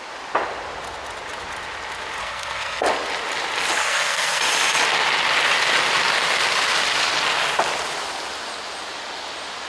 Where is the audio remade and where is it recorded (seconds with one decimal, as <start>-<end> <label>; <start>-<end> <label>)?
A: 0.0-2.2 recorded; 2.2-2.8 remade; 2.8-3.8 recorded; 3.8-4.4 remade; 4.4-9.7 recorded